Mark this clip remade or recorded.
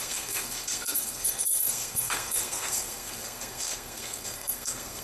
remade